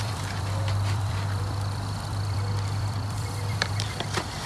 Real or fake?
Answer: fake